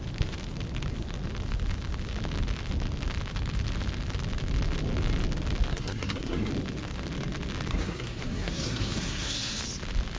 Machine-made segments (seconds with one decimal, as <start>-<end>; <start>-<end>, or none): 5.7-6.5; 7.7-9.6